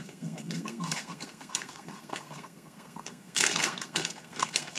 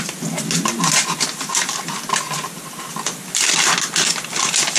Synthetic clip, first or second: first